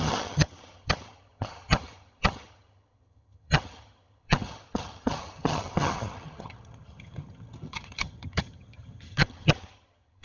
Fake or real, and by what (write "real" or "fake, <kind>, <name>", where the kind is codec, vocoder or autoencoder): fake, vocoder, HiFi-GAN